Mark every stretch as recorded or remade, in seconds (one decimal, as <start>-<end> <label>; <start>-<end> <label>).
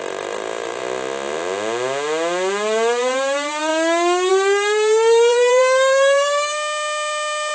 0.0-0.8 remade; 0.8-2.5 recorded; 2.5-3.7 remade; 3.7-4.3 recorded; 4.3-7.5 remade